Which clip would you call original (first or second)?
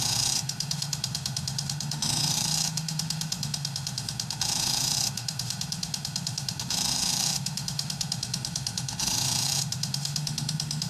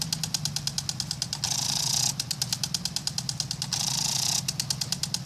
second